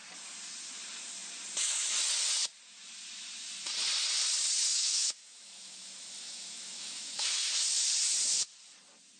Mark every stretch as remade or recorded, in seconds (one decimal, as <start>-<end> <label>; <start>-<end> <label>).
0.0-4.7 recorded; 4.7-7.5 remade; 7.5-9.2 recorded